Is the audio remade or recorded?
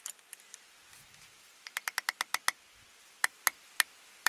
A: recorded